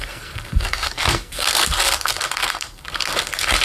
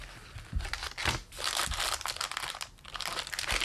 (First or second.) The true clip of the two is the second